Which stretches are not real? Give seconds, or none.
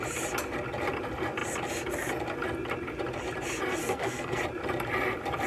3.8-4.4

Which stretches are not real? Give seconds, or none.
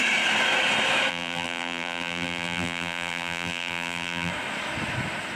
1.1-4.3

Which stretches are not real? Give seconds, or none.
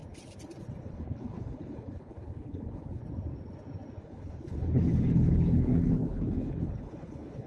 0.8-3.0; 4.0-7.5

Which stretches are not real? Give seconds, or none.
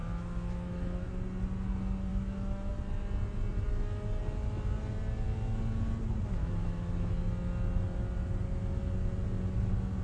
0.0-1.1; 2.1-2.7; 6.4-7.1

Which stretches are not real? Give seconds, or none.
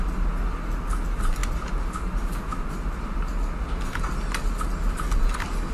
none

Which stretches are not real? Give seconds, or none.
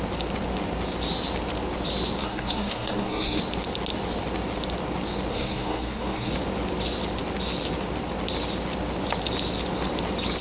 2.2-3.4; 5.3-6.3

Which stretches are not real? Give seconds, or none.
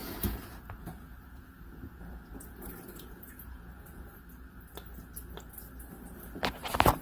0.0-4.2